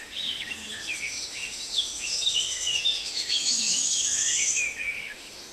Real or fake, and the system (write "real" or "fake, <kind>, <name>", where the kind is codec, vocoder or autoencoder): fake, autoencoder, DAC-VAE